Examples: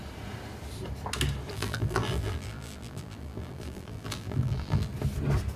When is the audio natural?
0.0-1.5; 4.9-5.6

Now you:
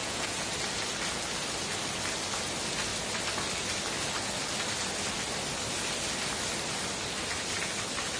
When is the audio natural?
0.5-8.2